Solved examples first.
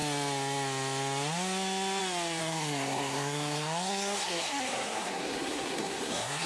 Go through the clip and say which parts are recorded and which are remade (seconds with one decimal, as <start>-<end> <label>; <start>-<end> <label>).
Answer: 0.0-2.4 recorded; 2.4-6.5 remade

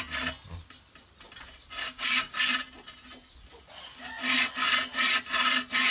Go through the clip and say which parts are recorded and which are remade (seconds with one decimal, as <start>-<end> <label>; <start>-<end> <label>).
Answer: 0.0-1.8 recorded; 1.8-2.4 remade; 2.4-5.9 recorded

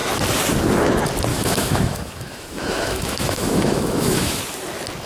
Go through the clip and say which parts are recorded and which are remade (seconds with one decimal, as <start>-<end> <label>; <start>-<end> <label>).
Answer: 0.0-1.3 recorded; 1.3-4.4 remade; 4.4-5.1 recorded

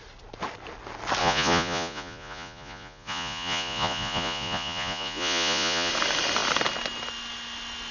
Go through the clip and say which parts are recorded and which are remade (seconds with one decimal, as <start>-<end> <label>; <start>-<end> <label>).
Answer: 0.0-1.2 recorded; 1.2-5.9 remade; 5.9-7.9 recorded

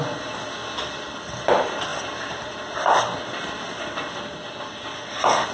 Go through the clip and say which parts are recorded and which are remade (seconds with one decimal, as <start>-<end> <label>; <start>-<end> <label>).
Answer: 0.0-5.5 recorded

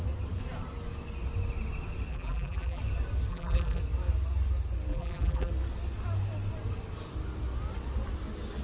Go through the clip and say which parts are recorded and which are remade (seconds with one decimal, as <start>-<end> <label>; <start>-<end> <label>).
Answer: 0.0-2.1 recorded; 2.1-2.8 remade; 2.8-3.3 recorded; 3.3-3.8 remade; 3.8-4.9 recorded; 4.9-5.5 remade; 5.5-8.6 recorded

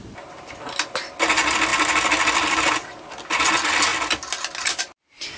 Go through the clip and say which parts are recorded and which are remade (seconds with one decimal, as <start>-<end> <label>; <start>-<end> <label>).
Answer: 0.0-5.4 recorded